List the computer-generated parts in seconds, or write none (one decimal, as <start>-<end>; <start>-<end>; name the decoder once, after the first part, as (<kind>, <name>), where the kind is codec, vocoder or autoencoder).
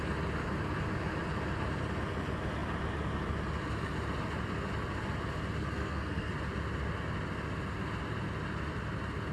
5.6-6.3 (codec, SNAC)